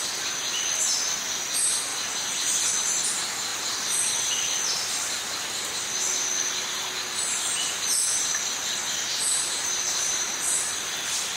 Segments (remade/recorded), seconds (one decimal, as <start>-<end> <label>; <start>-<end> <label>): 0.0-9.1 recorded; 9.1-10.3 remade; 10.3-11.4 recorded